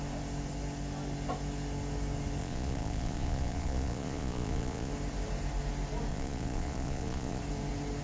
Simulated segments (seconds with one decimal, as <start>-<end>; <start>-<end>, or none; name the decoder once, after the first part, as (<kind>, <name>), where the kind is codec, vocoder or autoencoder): 2.4-4.9 (vocoder, Vocos); 6.1-7.4